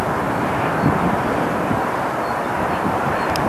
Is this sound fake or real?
real